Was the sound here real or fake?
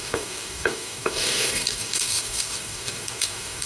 fake